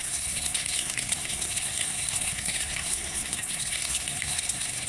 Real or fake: fake